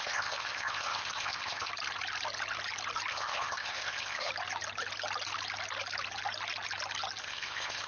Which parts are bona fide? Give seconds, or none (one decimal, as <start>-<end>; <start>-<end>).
1.7-3.1; 4.3-7.2